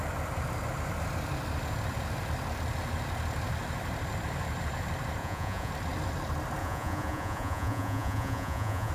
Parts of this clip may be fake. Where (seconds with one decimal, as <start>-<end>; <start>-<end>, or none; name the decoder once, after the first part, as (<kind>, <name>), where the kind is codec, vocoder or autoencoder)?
5.2-5.7 (vocoder, Vocos); 6.6-8.9